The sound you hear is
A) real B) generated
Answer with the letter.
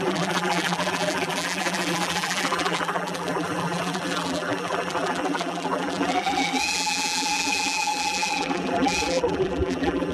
B